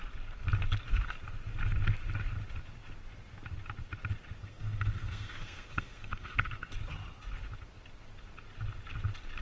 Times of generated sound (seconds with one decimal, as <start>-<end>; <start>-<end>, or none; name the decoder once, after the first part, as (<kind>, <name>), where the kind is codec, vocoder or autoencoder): 4.4-6.7 (codec, SNAC)